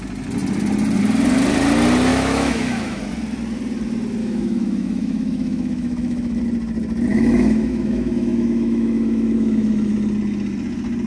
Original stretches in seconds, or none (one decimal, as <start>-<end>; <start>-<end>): 0.0-2.1; 3.0-4.2; 6.4-7.1; 9.9-11.1